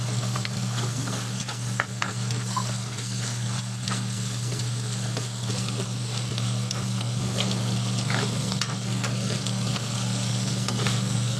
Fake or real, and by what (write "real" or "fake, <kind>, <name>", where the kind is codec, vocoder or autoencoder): fake, codec, SNAC